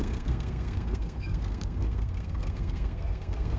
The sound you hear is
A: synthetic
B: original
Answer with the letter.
A